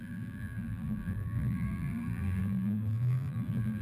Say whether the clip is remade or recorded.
remade